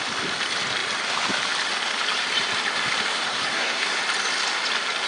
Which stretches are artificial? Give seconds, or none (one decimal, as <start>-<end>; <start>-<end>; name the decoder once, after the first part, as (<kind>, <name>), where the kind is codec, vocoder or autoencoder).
3.3-4.0 (codec, SNAC)